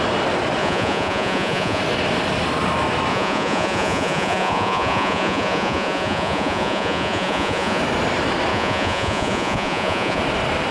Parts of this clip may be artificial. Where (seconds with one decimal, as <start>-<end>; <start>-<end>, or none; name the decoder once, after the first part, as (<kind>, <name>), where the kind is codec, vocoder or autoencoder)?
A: 0.6-1.8 (vocoder, Vocos); 3.1-7.8; 8.5-10.2